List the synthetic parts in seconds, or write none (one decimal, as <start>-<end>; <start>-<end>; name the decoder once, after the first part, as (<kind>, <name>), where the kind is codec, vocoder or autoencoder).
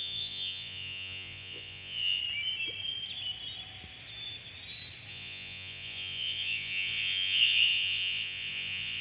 0.0-2.2 (vocoder, Vocos); 5.1-9.0